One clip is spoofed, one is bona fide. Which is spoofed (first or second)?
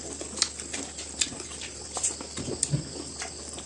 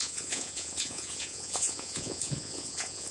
second